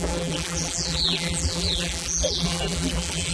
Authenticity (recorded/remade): remade